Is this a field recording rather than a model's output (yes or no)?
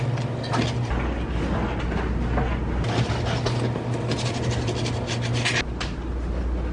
yes